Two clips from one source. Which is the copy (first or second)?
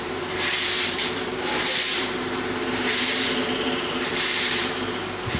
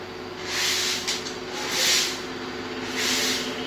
first